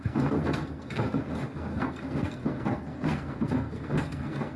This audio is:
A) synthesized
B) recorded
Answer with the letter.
A